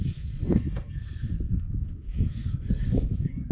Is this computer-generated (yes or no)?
yes